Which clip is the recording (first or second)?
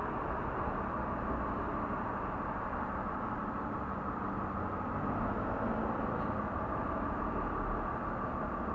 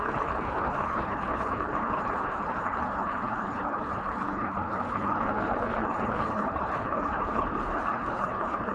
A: first